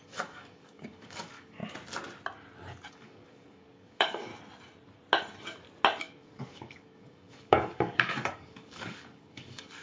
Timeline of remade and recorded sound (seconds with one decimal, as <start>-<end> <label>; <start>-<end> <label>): 0.0-1.6 remade; 1.6-2.9 recorded; 2.9-4.3 remade; 4.3-6.0 recorded; 6.0-9.8 remade